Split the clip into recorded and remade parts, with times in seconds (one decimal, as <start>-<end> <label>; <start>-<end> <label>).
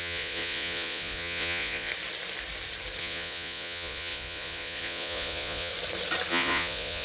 0.0-1.9 remade; 1.9-3.0 recorded; 3.0-5.7 remade; 5.7-6.3 recorded; 6.3-7.0 remade